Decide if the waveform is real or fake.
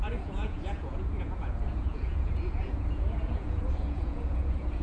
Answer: fake